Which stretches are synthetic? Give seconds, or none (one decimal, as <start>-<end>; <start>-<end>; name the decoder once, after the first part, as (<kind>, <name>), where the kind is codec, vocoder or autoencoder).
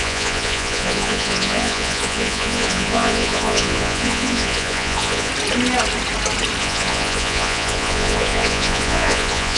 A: 0.0-5.3 (vocoder, Vocos); 6.6-9.6